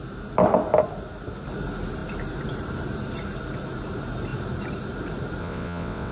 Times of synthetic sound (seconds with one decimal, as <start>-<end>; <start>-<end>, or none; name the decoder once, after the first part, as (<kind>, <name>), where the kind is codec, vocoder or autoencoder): 5.4-6.1 (vocoder, WaveNeXt)